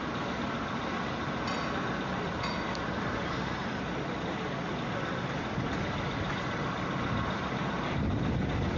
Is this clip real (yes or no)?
yes